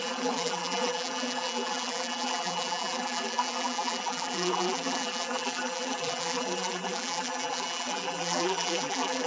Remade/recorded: remade